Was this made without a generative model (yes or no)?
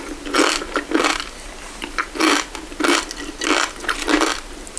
yes